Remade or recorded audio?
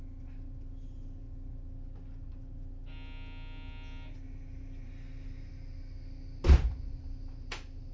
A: recorded